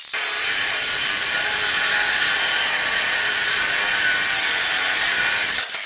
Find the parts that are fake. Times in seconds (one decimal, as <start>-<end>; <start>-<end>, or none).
none